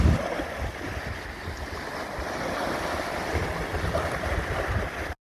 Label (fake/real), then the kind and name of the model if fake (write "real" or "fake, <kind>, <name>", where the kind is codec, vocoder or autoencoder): real